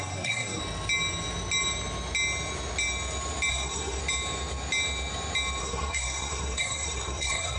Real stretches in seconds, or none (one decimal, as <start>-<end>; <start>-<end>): 0.6-3.5; 4.0-5.6